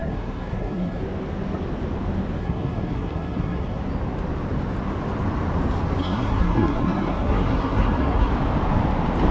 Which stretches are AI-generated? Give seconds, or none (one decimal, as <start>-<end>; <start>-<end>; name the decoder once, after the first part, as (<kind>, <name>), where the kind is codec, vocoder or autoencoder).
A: 0.0-1.0 (codec, SNAC); 2.4-3.8; 6.0-8.3